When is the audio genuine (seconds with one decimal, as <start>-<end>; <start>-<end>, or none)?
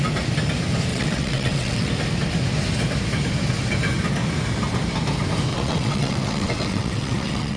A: 0.0-0.9; 1.9-5.5